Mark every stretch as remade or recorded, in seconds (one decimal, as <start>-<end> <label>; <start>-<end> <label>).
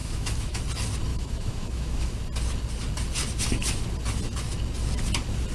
0.0-0.6 remade; 0.6-1.1 recorded; 1.1-2.2 remade; 2.2-5.5 recorded